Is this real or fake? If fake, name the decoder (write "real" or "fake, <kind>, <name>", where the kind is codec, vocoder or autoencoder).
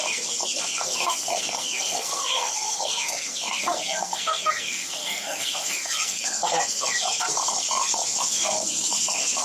fake, codec, SNAC